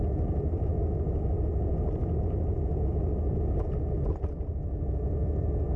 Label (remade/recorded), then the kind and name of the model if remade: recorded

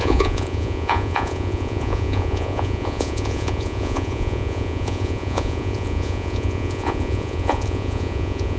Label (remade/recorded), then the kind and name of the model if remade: remade, vocoder, Vocos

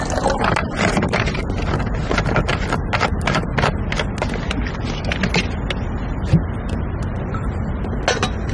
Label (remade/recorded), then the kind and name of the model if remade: recorded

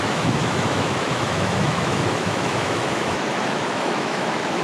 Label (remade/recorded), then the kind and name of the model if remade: remade, autoencoder, DAC-VAE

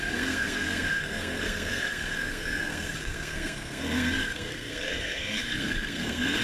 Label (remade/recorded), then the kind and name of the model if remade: remade, codec, SNAC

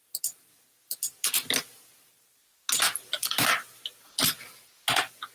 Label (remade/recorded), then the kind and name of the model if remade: recorded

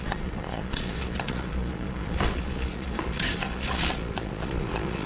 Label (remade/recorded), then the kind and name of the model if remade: remade, vocoder, Vocos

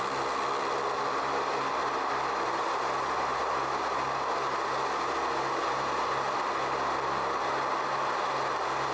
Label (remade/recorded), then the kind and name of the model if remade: recorded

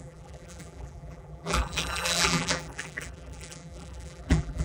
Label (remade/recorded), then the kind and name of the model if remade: remade, vocoder, BigVGAN v2